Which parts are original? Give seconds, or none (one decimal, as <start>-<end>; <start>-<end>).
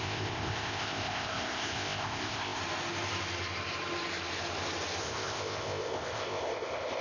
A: 2.6-5.0